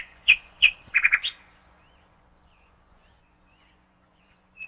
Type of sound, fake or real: fake